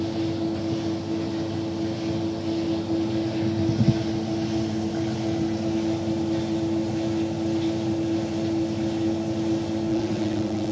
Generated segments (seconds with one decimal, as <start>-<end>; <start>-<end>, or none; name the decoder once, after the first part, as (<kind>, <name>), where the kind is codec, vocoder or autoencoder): 9.9-10.7 (vocoder, WaveNeXt)